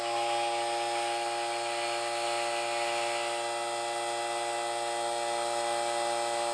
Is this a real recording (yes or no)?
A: yes